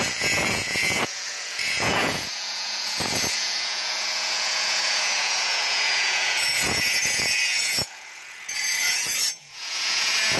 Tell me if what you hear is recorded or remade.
remade